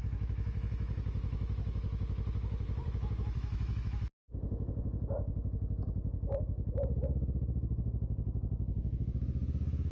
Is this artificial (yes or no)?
yes